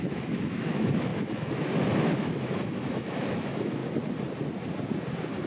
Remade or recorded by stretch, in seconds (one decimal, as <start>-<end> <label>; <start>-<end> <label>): 0.0-3.8 remade; 3.8-5.5 recorded